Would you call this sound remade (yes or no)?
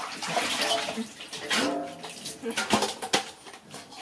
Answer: no